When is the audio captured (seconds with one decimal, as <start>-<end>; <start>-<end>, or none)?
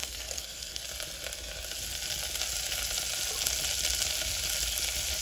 0.8-5.2